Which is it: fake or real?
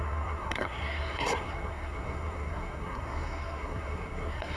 fake